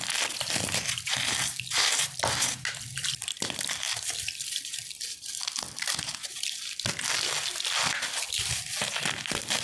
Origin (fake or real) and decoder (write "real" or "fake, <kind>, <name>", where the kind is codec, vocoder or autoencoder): real